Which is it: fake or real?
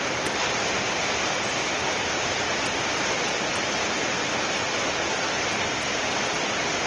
real